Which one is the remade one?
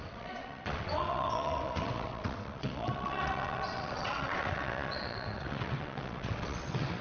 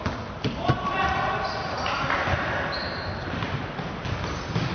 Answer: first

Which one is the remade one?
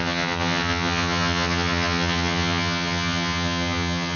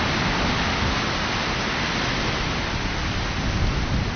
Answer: first